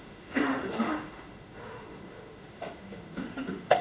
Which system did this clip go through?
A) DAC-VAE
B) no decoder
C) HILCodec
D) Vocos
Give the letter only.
A